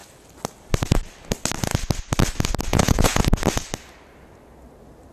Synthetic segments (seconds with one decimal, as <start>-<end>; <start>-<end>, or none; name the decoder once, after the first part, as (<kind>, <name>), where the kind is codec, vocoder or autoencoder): 2.7-3.2 (vocoder, Vocos)